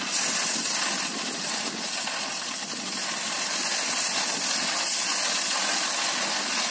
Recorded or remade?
recorded